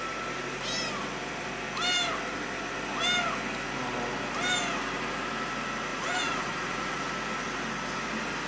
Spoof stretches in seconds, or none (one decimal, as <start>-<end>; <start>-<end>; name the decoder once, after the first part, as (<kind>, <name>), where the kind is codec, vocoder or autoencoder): 5.9-6.9 (vocoder, Vocos)